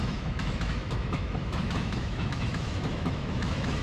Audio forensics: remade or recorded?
remade